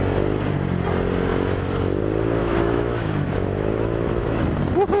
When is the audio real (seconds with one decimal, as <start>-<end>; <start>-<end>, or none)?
0.0-1.3; 2.0-2.4; 4.4-5.0